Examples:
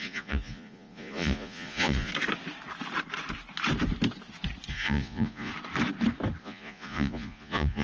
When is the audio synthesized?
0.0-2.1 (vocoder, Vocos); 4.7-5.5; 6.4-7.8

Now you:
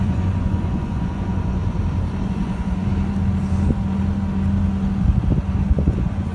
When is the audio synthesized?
0.0-1.6 (vocoder, Vocos); 2.2-2.9; 5.7-6.3

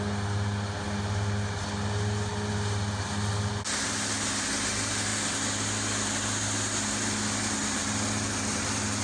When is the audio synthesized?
none

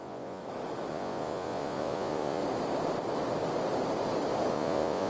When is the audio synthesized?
0.0-0.4 (vocoder, Vocos); 0.9-2.4; 4.5-5.1

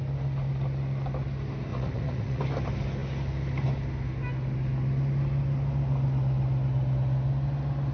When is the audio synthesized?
1.7-2.4 (vocoder, Vocos)

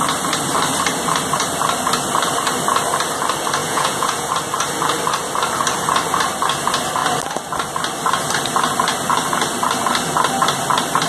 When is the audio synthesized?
3.6-4.3 (vocoder, Vocos)

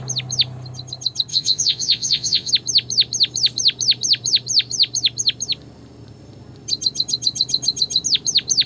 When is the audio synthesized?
1.3-2.5 (vocoder, Vocos)